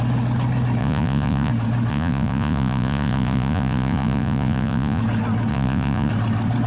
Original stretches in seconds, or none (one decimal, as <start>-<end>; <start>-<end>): 0.0-0.8; 1.5-1.9; 5.0-5.5; 6.1-6.7